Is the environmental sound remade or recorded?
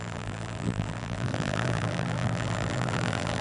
remade